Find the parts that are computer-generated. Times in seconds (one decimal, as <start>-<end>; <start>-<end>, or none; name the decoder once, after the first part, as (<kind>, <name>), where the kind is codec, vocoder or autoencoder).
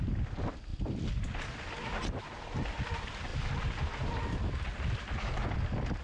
none